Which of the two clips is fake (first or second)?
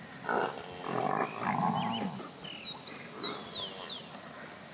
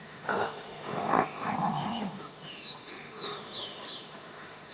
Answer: second